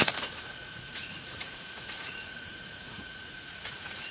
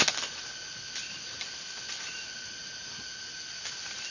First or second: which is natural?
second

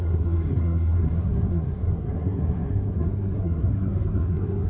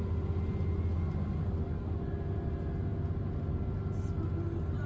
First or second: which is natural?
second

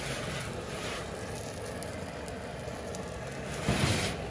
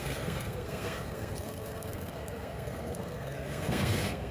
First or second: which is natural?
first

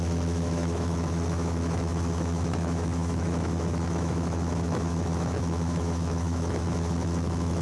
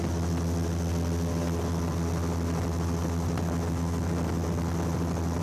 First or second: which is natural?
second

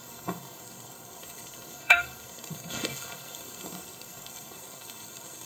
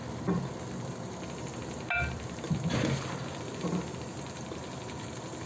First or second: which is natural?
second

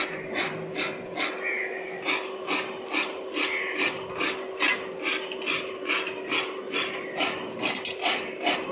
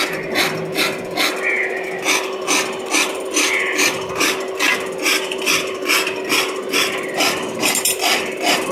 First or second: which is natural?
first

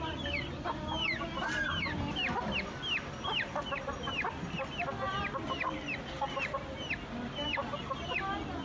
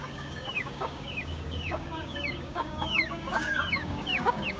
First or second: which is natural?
first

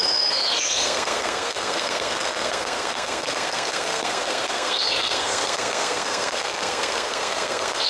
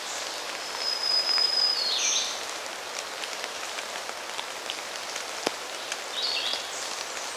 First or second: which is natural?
second